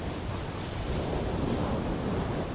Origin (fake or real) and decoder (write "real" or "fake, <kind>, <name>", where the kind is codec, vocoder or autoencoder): real